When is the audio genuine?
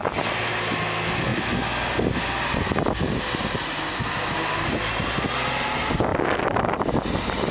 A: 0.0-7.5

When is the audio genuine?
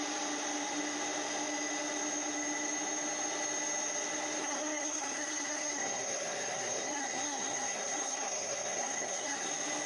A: 0.0-4.4; 9.5-9.9